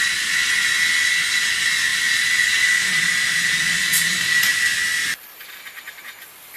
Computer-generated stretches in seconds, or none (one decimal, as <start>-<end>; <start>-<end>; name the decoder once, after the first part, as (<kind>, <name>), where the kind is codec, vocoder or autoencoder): none